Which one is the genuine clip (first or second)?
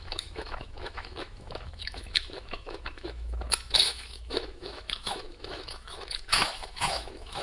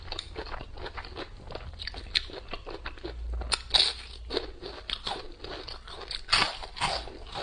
second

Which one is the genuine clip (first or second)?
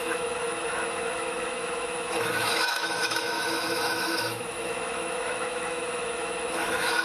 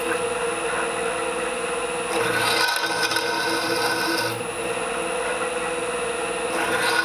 second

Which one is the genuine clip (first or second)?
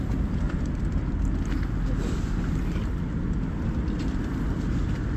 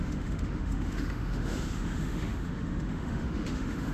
first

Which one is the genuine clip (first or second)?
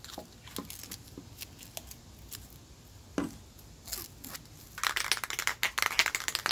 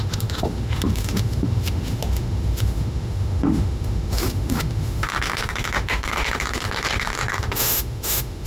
first